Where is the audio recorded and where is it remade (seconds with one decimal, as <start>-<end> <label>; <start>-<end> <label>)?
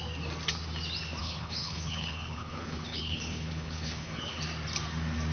0.0-1.2 recorded; 1.2-4.4 remade; 4.4-5.3 recorded